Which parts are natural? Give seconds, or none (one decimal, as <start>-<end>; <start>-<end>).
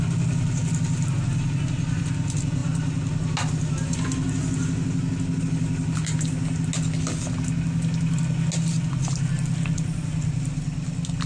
0.0-11.3